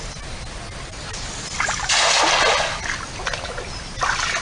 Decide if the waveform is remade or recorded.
recorded